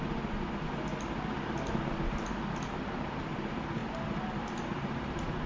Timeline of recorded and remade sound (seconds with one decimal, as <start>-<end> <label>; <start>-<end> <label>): 0.0-5.5 recorded